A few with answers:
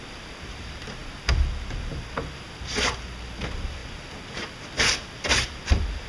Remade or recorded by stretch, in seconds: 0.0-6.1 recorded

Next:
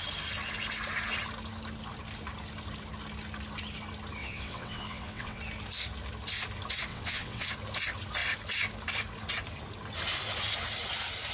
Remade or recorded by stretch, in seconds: 0.0-4.2 recorded; 4.2-5.4 remade; 5.4-6.9 recorded; 6.9-7.5 remade; 7.5-11.3 recorded

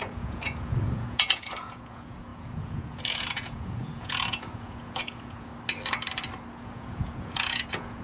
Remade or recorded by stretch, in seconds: 0.0-5.5 remade; 5.5-6.5 recorded; 6.5-8.0 remade